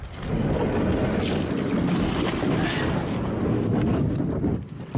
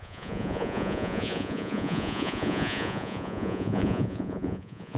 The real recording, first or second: first